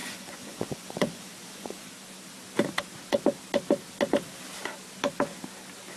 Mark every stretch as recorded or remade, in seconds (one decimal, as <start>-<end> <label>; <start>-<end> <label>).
0.0-1.9 remade; 1.9-6.0 recorded